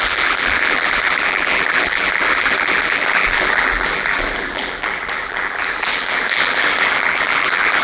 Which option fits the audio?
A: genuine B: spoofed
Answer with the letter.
B